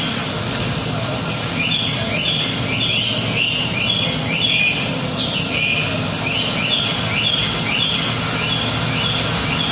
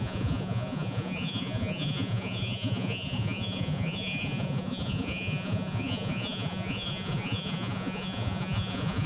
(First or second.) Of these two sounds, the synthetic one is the second